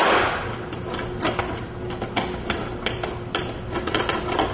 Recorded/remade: recorded